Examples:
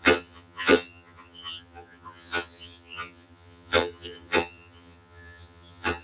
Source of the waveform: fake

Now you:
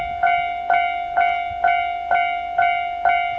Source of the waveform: real